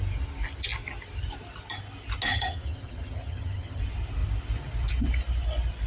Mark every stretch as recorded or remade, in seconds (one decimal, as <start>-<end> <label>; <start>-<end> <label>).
0.0-2.3 recorded; 2.3-3.8 remade; 3.8-5.9 recorded